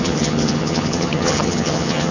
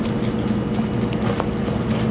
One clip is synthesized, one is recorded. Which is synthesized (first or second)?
first